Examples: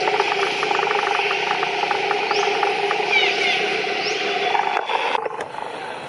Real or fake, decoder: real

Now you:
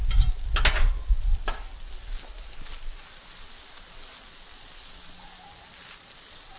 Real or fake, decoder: real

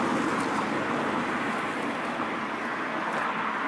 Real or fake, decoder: real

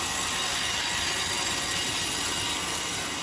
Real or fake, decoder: real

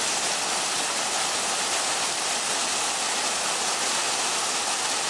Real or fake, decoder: real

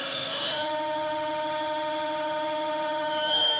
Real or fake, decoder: fake, autoencoder, DAC-VAE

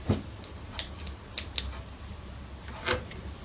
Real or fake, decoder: real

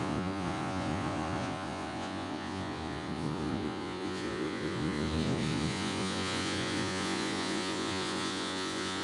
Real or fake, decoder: fake, vocoder, Vocos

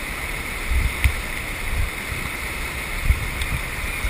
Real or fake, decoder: real